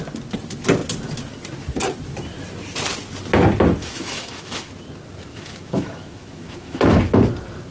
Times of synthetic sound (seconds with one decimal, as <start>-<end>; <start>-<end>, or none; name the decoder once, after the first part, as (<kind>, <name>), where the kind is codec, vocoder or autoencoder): 3.8-4.7 (autoencoder, DAC-VAE); 5.3-7.0